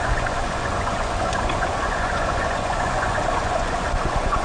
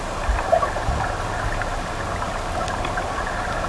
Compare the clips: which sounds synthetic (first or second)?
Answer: first